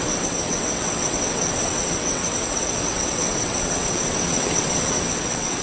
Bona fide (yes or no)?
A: no